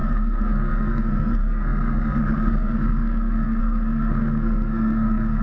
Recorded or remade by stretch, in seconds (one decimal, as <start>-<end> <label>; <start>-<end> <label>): 0.0-5.4 remade